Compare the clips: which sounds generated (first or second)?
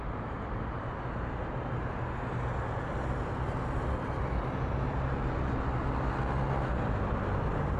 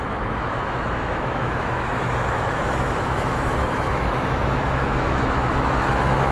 second